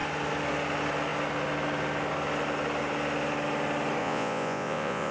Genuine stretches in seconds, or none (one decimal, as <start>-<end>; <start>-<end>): 0.0-4.0